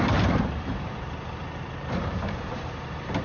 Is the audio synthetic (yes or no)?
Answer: yes